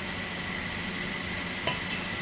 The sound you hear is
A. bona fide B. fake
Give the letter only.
A